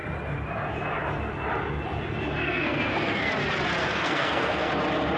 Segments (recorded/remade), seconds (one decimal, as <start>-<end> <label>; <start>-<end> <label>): 0.0-2.4 recorded; 2.4-3.3 remade; 3.3-3.8 recorded; 3.8-4.7 remade; 4.7-5.2 recorded